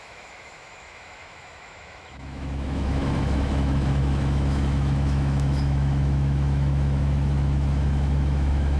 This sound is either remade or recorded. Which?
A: remade